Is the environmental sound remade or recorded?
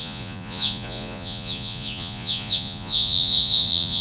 remade